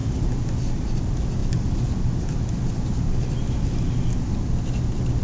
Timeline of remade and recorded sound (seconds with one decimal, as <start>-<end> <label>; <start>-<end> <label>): 0.0-0.5 remade; 0.5-1.4 recorded; 1.4-4.3 remade; 4.3-5.2 recorded